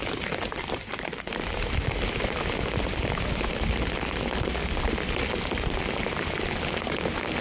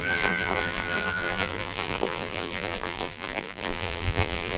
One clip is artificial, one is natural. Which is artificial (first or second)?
second